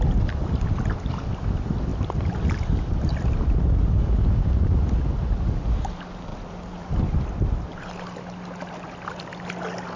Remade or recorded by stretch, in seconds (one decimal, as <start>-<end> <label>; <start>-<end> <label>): 0.0-10.0 recorded